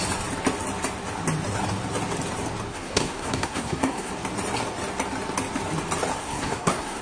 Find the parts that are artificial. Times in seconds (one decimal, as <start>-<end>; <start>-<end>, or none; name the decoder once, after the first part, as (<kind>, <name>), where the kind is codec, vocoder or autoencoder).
2.7-4.1 (codec, SNAC); 6.2-7.0